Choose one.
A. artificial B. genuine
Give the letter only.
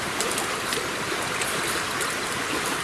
B